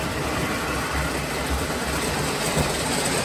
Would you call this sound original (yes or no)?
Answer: yes